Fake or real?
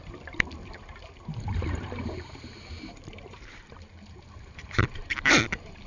fake